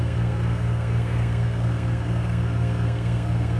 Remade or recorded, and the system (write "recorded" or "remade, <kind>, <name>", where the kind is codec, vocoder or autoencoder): remade, codec, SNAC